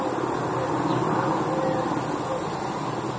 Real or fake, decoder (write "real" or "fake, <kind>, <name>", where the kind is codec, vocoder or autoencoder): real